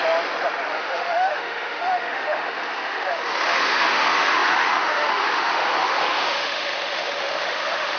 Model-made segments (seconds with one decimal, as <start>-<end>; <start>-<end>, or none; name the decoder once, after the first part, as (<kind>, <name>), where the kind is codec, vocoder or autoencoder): 0.7-8.0 (autoencoder, DAC-VAE)